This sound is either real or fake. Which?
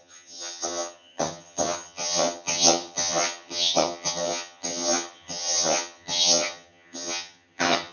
fake